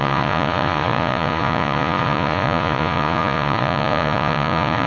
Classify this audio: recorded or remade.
remade